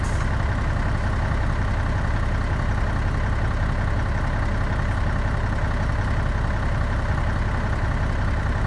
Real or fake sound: real